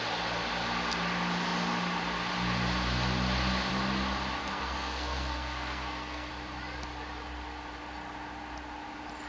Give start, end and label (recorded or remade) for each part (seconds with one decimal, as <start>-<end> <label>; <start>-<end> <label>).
0.0-4.4 recorded; 4.4-6.3 remade; 6.3-9.3 recorded